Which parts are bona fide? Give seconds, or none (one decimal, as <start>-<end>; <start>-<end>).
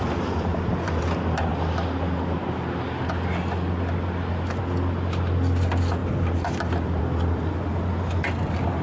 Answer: 0.0-8.8